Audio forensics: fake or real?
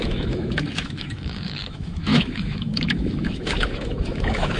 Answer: fake